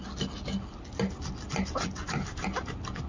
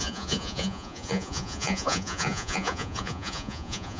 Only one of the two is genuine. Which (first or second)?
first